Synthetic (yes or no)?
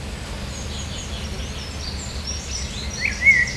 no